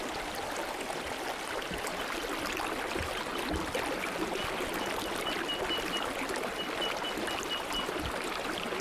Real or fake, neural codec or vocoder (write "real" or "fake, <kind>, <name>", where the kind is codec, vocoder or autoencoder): real